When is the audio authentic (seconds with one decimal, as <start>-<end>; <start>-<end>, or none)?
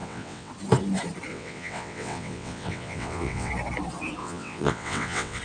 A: 0.5-1.3; 3.5-4.2